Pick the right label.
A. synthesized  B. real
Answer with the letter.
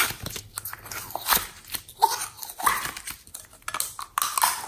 B